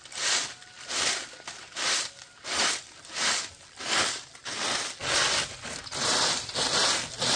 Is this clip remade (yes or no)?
no